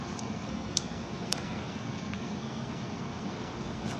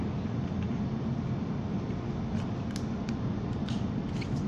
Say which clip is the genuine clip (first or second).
second